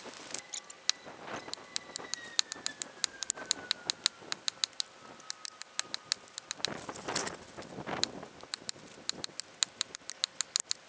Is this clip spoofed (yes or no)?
no